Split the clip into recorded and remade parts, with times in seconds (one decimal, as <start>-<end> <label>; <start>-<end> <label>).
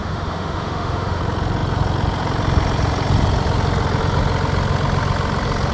0.0-1.2 remade; 1.2-5.7 recorded